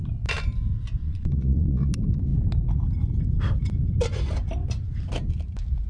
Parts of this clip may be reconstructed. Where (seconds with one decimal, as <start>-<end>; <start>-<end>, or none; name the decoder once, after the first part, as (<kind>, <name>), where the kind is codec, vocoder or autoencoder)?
1.0-1.9 (vocoder, Vocos)